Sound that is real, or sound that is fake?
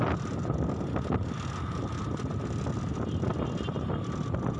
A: real